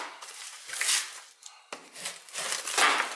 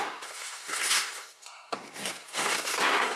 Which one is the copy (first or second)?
second